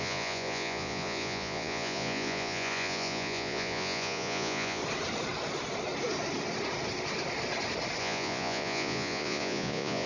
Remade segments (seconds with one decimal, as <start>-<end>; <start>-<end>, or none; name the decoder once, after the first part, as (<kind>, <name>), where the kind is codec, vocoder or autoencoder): 0.0-4.8 (vocoder, Vocos); 8.0-10.1